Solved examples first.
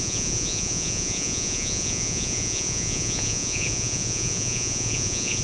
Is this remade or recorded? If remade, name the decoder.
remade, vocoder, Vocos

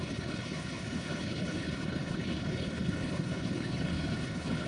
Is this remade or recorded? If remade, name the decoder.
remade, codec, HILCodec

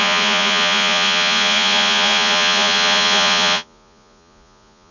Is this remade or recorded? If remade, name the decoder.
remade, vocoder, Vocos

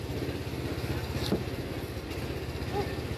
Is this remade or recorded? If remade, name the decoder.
recorded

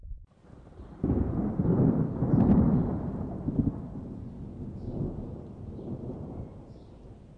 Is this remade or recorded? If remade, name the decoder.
remade, vocoder, BigVGAN v2